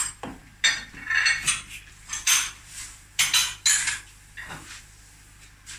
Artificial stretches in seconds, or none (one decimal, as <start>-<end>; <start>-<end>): 0.0-0.4; 1.9-3.4; 4.5-5.8